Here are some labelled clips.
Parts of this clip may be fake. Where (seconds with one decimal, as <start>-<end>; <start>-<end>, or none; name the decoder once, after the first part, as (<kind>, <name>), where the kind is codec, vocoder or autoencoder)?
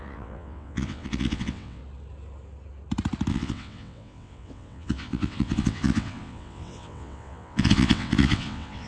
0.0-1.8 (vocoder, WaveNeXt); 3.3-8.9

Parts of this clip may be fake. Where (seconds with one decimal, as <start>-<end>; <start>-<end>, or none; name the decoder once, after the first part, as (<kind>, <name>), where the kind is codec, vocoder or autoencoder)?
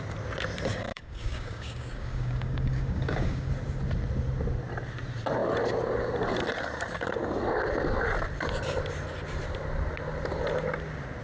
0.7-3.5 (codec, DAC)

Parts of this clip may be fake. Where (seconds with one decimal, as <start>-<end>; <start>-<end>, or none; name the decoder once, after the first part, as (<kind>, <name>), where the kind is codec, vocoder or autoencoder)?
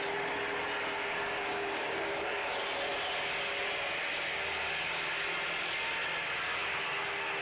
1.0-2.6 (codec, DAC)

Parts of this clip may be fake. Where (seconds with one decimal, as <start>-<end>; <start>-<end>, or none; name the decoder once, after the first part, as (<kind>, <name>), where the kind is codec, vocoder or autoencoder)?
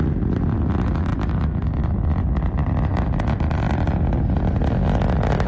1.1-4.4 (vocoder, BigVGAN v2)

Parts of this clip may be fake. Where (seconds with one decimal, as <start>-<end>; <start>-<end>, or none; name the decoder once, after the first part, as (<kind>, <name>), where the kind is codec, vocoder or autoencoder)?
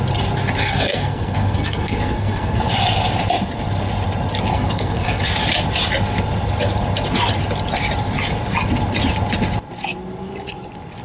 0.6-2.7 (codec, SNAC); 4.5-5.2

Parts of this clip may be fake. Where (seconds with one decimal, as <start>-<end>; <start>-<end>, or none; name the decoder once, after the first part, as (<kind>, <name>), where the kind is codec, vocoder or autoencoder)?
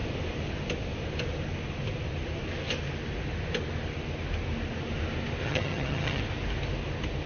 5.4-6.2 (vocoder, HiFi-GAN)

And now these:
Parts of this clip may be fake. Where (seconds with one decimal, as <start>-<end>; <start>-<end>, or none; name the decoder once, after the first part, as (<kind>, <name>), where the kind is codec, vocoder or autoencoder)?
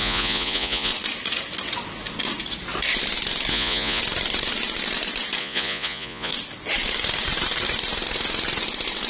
0.0-0.9 (vocoder, Vocos); 3.5-4.0; 5.4-6.3